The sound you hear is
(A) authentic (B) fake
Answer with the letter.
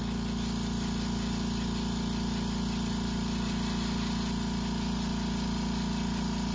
A